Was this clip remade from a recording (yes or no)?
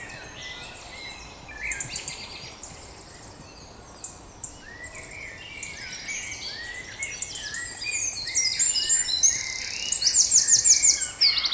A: no